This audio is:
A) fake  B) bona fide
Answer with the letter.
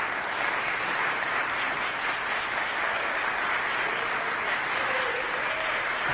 B